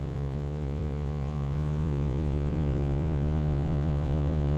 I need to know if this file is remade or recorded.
remade